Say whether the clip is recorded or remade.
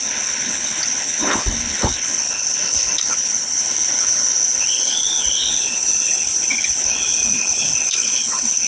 remade